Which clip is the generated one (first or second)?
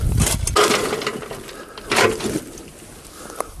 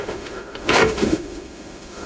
second